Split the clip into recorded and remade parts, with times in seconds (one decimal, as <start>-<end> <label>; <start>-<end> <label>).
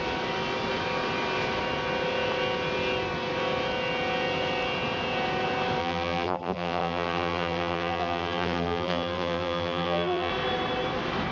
0.0-5.8 recorded; 5.8-10.3 remade; 10.3-11.3 recorded